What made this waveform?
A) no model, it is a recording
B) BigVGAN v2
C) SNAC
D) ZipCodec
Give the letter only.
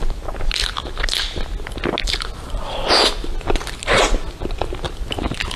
A